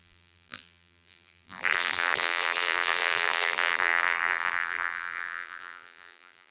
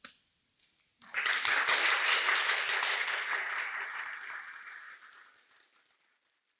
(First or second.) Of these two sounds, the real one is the second